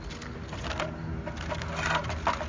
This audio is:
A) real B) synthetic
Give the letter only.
A